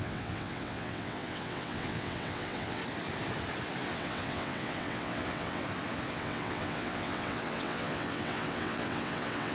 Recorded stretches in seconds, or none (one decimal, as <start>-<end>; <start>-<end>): 2.8-3.9; 5.6-6.1

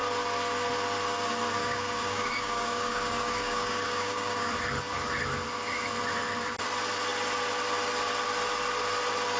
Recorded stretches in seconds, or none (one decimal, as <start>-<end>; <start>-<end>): 0.0-1.6; 4.5-9.4

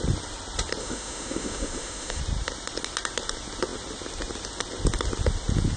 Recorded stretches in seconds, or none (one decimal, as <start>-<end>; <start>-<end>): 0.0-0.8; 2.2-5.8

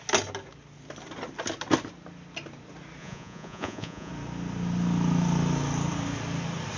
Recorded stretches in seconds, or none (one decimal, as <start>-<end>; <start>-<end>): 0.0-3.0; 4.1-6.8

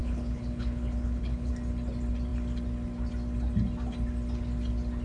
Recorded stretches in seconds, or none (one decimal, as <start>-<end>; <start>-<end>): 1.5-5.0